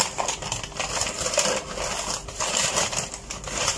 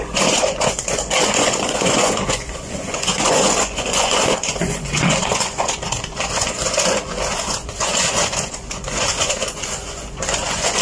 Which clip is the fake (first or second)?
second